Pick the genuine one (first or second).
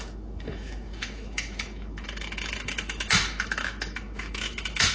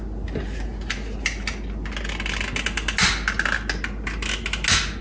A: second